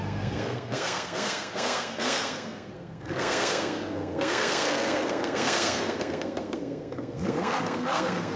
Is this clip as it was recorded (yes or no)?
no